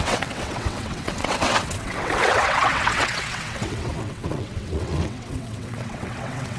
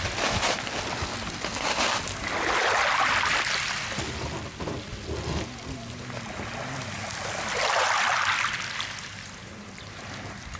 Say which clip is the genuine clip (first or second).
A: second